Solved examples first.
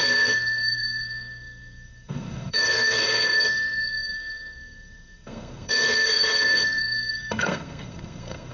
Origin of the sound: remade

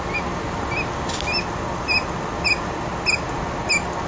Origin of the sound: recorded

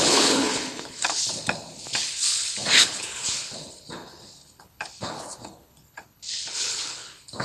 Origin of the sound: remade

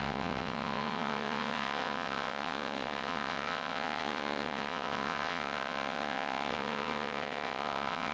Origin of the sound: remade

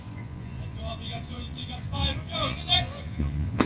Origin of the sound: remade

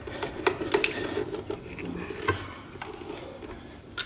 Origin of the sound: recorded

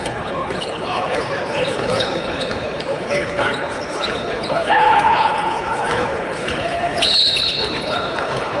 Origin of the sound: remade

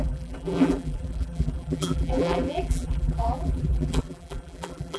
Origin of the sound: remade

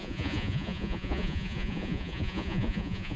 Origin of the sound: remade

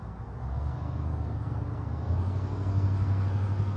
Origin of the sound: remade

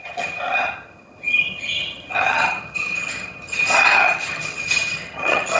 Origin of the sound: remade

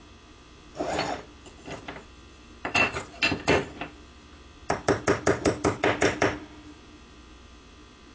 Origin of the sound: remade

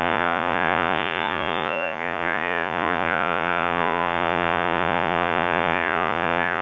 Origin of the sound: remade